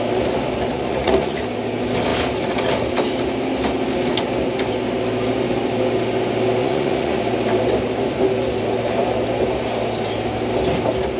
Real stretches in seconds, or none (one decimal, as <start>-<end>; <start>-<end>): 0.0-0.7; 1.4-6.6; 7.2-11.2